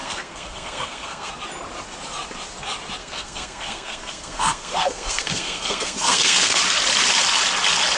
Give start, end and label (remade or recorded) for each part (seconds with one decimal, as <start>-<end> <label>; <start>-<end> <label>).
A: 0.0-1.3 remade; 1.3-3.0 recorded; 3.0-6.6 remade; 6.6-8.0 recorded